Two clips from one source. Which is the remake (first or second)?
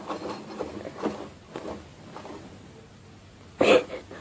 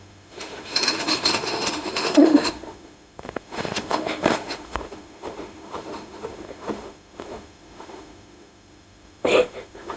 second